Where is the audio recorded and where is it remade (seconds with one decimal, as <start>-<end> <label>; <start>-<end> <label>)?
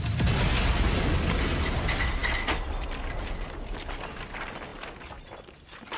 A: 0.0-6.0 recorded